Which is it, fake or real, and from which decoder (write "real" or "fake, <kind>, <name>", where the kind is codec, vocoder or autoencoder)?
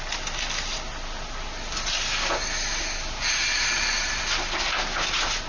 real